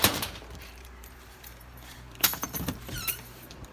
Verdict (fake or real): fake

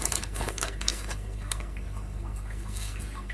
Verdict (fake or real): fake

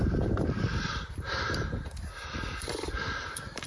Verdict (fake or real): fake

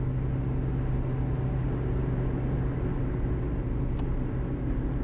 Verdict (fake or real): real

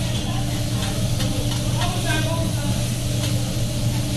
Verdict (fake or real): real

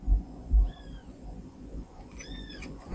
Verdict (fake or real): fake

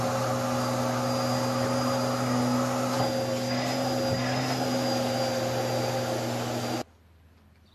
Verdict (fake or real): real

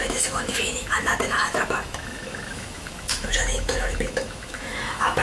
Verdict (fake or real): fake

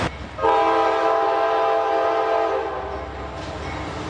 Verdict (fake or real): real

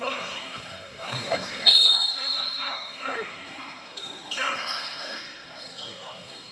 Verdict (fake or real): fake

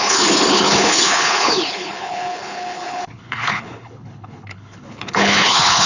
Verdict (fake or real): fake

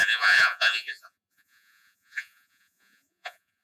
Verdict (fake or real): fake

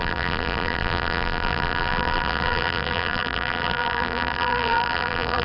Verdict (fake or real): fake